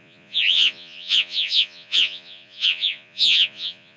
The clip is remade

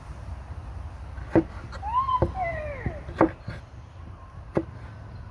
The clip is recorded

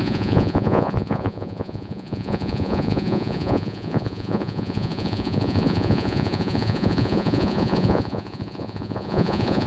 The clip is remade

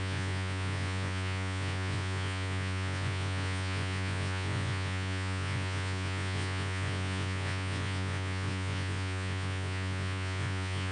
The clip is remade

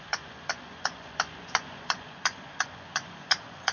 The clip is remade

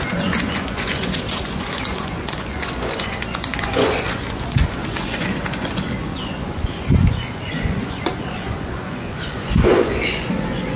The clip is remade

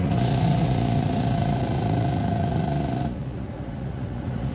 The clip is remade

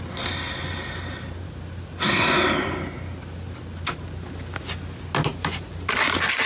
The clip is recorded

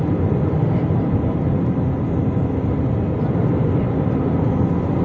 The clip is recorded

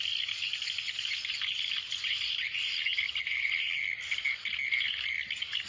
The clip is recorded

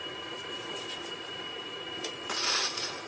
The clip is remade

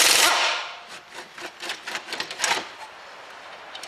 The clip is recorded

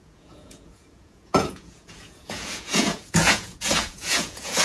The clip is remade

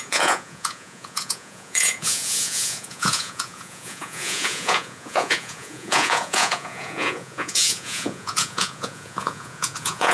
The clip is remade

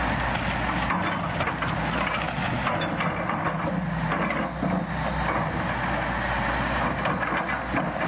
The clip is recorded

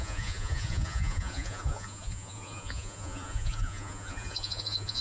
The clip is remade